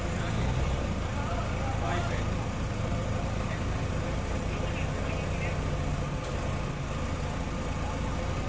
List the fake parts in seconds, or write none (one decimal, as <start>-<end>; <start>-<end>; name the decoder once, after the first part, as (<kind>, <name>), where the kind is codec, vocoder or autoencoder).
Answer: none